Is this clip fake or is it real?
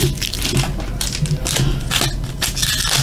real